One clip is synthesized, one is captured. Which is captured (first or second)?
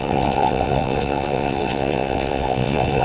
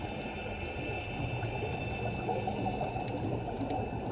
second